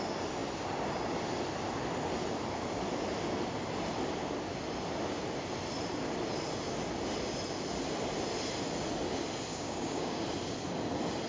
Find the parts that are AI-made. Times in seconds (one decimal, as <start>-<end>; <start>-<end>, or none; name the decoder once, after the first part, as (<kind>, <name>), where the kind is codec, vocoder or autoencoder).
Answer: 9.5-10.2 (codec, DAC)